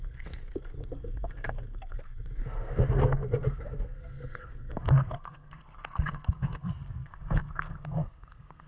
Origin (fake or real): fake